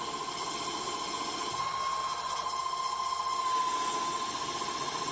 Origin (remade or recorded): recorded